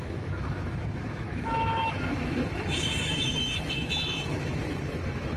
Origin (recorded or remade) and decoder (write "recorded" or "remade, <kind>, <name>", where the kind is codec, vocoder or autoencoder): remade, autoencoder, DAC-VAE